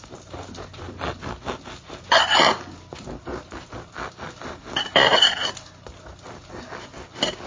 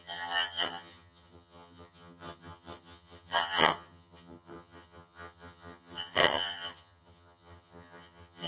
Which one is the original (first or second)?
first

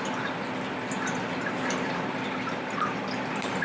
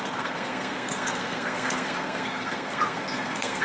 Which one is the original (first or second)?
first